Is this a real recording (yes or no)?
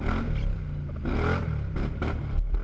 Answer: yes